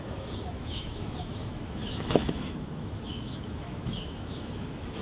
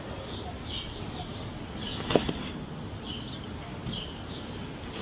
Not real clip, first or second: first